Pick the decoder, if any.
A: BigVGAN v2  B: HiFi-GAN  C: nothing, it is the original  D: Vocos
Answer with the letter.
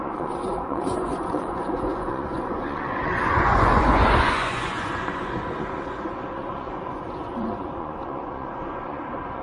D